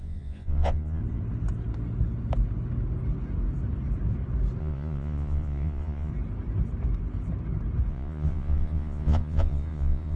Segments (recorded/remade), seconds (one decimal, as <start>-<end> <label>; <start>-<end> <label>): 0.0-1.0 remade; 1.0-4.6 recorded; 4.6-6.1 remade; 6.1-7.9 recorded; 7.9-10.2 remade